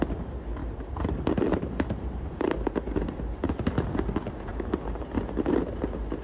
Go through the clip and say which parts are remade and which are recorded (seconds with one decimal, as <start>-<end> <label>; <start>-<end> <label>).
0.0-0.6 recorded; 0.6-3.5 remade; 3.5-4.5 recorded; 4.5-5.0 remade; 5.0-6.2 recorded